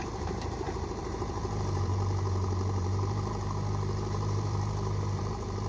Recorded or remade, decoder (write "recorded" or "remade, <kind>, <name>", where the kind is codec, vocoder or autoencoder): remade, vocoder, BigVGAN v2